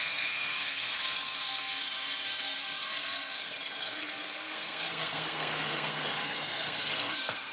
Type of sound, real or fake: fake